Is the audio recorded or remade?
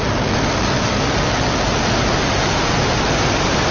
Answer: recorded